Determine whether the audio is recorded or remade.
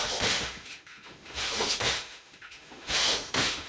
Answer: remade